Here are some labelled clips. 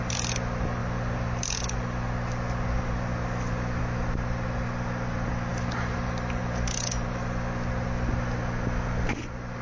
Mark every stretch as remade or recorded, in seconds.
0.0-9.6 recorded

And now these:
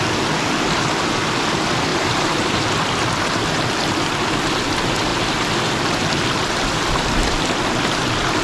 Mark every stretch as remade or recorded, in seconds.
0.0-1.9 recorded; 1.9-2.8 remade; 2.8-8.4 recorded